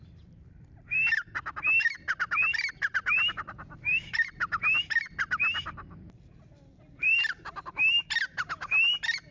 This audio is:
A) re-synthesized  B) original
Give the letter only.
A